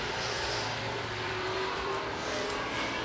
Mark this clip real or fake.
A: fake